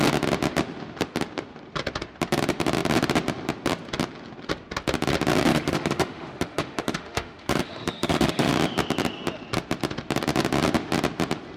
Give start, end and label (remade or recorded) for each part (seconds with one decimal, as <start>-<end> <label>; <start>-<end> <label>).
0.0-5.5 recorded; 5.5-8.5 remade; 8.5-11.6 recorded